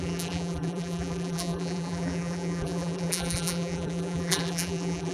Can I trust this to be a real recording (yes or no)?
no